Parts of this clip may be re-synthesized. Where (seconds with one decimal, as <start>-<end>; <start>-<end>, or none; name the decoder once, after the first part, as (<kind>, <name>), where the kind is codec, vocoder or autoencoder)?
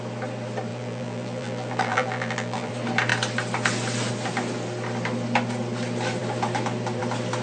0.7-2.7 (vocoder, BigVGAN v2)